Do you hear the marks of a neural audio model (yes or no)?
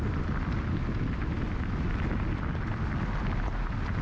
no